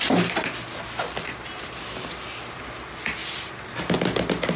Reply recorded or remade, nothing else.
recorded